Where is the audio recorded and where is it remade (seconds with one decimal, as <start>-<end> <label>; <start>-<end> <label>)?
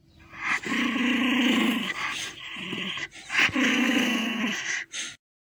0.0-3.7 recorded; 3.7-4.4 remade; 4.4-5.4 recorded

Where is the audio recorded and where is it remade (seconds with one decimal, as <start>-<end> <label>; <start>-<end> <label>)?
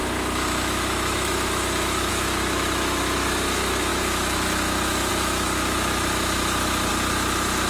0.0-6.9 remade; 6.9-7.7 recorded